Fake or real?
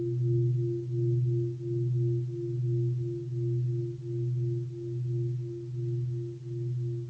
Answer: real